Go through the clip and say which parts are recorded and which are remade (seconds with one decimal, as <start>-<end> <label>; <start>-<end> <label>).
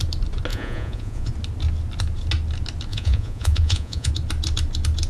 0.0-0.5 recorded; 0.5-1.3 remade; 1.3-2.9 recorded; 2.9-4.1 remade; 4.1-5.1 recorded